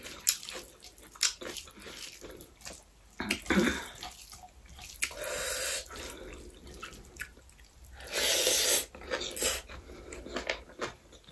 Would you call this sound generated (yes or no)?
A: no